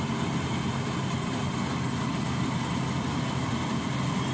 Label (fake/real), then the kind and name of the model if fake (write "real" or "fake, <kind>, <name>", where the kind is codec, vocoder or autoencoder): real